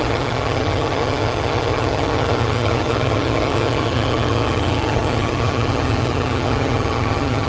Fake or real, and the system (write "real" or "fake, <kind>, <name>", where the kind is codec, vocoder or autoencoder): fake, vocoder, HiFi-GAN